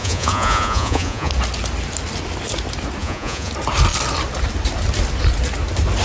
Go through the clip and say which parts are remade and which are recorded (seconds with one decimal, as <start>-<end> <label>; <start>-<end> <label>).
0.0-1.3 remade; 1.3-3.0 recorded; 3.0-3.5 remade; 3.5-6.0 recorded